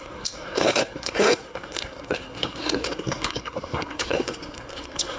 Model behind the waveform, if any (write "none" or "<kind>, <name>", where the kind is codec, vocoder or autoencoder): codec, SNAC